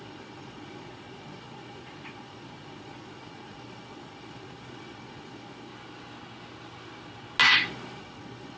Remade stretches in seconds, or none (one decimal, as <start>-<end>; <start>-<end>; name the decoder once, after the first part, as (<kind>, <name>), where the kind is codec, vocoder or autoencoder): 0.0-5.7 (vocoder, Vocos); 7.7-8.6